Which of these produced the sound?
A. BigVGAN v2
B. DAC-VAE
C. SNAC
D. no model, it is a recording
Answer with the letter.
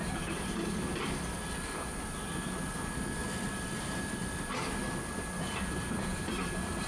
A